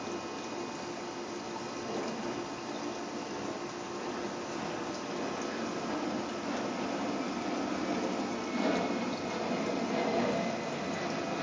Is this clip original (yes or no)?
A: yes